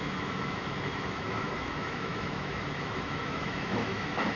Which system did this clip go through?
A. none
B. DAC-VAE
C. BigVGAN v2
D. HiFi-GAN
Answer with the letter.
B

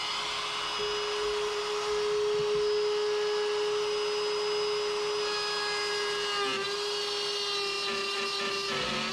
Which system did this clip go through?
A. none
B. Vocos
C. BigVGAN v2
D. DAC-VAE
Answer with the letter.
A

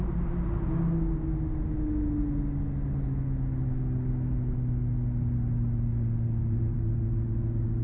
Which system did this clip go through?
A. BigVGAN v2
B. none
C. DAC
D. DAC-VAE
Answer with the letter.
B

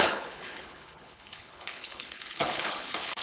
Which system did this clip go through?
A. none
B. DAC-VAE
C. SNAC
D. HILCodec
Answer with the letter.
D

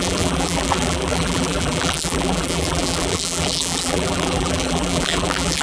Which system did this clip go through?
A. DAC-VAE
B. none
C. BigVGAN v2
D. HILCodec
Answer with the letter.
C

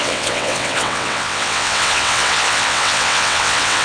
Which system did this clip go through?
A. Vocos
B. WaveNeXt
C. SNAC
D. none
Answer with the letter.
B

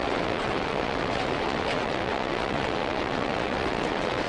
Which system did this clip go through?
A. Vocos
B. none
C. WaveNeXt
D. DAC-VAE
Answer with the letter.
C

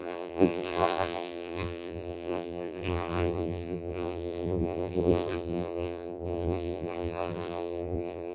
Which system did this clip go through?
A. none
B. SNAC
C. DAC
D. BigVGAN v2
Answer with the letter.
D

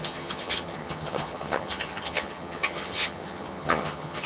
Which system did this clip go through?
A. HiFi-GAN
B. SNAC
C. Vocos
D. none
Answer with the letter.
A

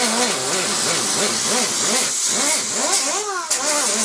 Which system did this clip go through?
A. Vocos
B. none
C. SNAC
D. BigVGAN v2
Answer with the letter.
B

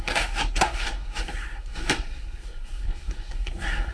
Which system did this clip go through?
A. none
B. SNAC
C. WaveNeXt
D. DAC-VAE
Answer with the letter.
B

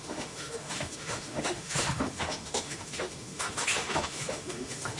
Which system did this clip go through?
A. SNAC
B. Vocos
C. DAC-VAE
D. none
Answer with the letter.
C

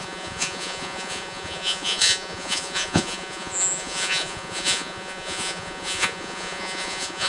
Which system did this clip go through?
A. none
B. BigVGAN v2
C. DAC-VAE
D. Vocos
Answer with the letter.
D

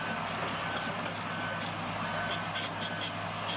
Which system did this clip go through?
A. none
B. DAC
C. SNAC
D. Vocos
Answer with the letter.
A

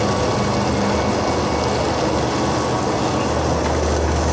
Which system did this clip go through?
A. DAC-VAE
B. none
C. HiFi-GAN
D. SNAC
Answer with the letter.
B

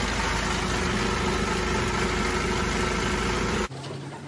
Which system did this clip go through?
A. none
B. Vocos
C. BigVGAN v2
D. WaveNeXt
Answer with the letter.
A